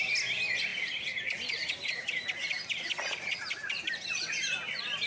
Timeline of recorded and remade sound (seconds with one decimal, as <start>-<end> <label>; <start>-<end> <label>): 0.0-5.1 recorded